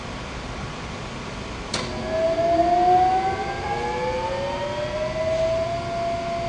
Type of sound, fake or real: real